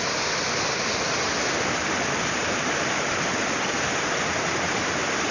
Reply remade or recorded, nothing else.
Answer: recorded